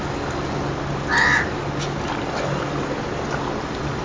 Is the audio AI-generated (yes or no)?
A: no